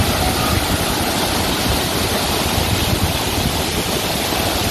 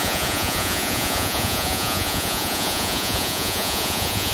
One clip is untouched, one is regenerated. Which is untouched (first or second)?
first